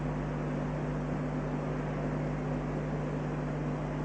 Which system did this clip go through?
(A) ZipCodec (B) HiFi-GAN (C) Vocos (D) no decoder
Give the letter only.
D